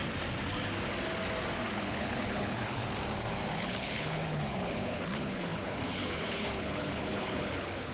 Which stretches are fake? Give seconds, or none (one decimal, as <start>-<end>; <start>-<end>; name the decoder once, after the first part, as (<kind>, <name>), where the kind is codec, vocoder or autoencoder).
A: 1.7-2.8 (codec, HILCodec); 3.5-7.9